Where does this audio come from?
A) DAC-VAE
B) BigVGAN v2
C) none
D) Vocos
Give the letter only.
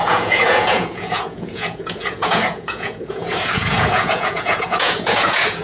D